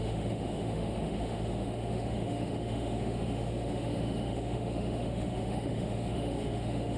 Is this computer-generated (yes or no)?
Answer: yes